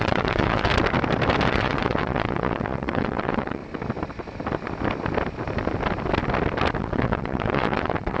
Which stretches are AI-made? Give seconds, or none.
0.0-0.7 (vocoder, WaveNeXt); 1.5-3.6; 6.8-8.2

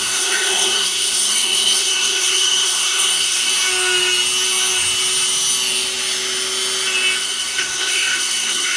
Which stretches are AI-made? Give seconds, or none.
0.0-3.5 (codec, SNAC); 7.2-8.8

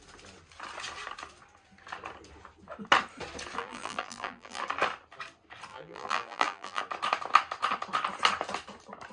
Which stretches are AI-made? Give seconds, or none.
3.6-4.6 (vocoder, BigVGAN v2); 5.7-6.8